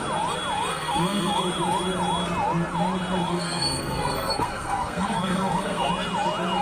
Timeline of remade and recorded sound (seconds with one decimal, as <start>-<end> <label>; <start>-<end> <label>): 0.0-0.7 recorded; 0.7-1.4 remade; 1.4-3.3 recorded; 3.3-5.9 remade; 5.9-6.6 recorded